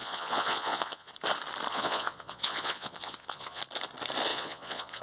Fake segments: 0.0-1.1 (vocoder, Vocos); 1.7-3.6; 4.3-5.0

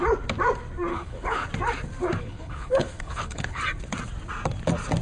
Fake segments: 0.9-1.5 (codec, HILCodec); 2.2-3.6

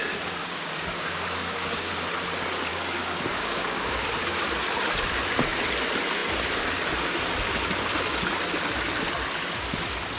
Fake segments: 0.4-1.9 (codec, DAC); 2.7-4.1

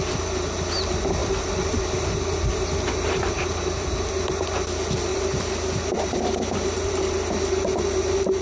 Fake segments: 5.1-6.9 (vocoder, BigVGAN v2)

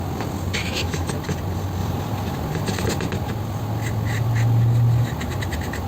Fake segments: 0.6-1.1 (autoencoder, DAC-VAE)

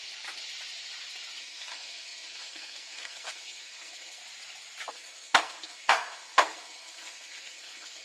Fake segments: 1.4-4.2 (codec, SNAC); 4.9-8.0

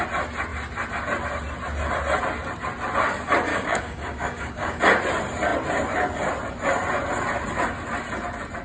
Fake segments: 3.5-4.8 (codec, DAC)

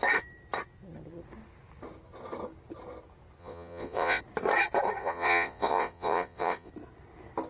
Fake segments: 3.4-4.2 (vocoder, Vocos); 5.0-6.7